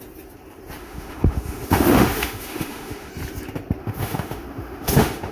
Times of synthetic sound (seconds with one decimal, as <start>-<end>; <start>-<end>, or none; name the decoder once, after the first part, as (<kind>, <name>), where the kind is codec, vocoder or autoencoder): 0.8-3.1 (autoencoder, DAC-VAE); 3.8-5.3

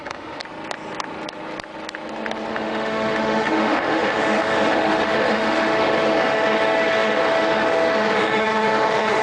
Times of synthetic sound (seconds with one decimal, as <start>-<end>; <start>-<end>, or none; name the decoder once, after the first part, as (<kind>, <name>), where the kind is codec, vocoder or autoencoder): 0.0-0.4 (autoencoder, DAC-VAE); 2.5-9.2

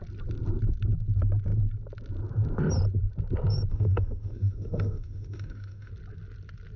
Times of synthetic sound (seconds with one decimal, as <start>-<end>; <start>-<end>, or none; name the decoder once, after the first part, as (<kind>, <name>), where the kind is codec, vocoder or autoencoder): 3.7-5.9 (autoencoder, DAC-VAE)

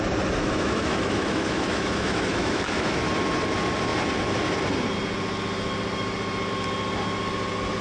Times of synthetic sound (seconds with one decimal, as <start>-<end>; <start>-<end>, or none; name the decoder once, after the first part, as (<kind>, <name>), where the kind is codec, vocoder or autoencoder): 0.4-3.0 (autoencoder, DAC-VAE)

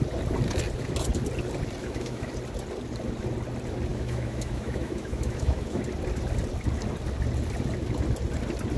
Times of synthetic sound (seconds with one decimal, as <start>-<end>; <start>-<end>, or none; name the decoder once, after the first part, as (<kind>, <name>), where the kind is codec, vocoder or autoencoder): 1.8-2.3 (autoencoder, DAC-VAE); 3.9-5.8